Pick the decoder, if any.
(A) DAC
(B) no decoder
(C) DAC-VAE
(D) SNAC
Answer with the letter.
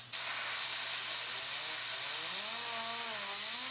B